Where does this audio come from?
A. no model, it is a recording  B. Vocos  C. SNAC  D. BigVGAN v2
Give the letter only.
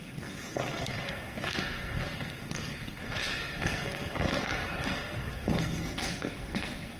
C